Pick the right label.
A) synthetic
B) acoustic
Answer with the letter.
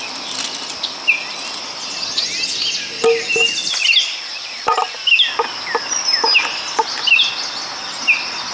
B